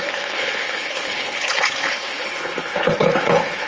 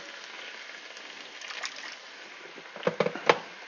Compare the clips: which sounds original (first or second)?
second